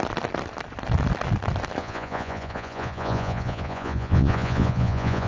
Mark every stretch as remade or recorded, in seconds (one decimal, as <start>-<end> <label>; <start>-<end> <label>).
0.0-1.8 recorded; 1.8-5.3 remade

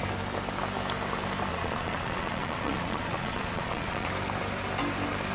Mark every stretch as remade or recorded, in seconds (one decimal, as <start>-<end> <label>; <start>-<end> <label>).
0.0-1.5 recorded; 1.5-4.1 remade; 4.1-5.3 recorded